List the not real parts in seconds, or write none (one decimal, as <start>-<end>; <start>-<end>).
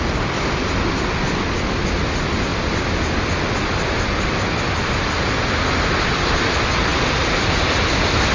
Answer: none